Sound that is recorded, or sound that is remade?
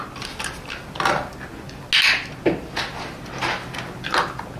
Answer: recorded